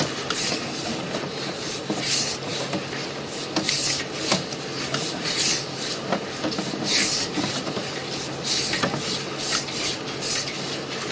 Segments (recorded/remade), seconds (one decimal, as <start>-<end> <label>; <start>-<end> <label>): 0.0-11.1 recorded